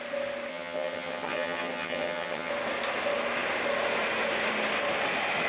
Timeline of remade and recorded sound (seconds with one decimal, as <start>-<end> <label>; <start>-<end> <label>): 0.0-0.5 recorded; 0.5-2.5 remade; 2.5-5.5 recorded